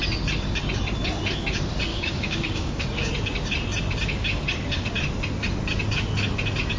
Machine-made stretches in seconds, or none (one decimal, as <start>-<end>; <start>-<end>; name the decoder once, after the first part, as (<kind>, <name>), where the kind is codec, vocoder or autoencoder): 1.9-3.1 (codec, DAC)